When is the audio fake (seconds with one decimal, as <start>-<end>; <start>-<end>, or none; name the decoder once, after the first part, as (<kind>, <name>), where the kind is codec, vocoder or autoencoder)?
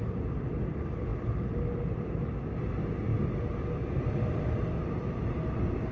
none